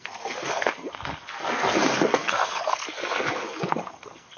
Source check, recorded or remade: remade